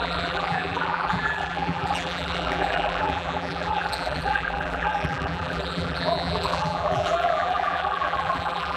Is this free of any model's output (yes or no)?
no